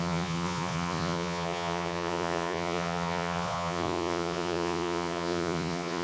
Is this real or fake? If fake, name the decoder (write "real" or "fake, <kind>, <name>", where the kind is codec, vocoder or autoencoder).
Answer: fake, vocoder, Vocos